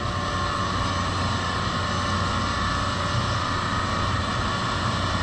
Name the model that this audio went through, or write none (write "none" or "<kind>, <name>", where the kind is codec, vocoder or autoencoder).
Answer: none